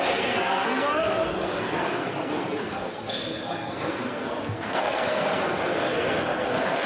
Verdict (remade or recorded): remade